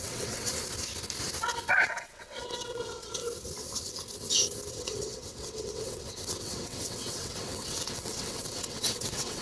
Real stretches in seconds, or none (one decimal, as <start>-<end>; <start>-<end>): 0.5-1.8; 3.2-4.7